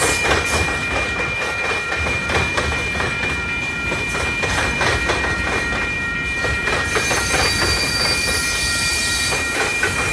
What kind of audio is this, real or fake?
fake